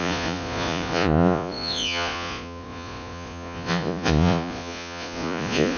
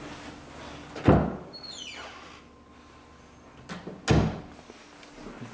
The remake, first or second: first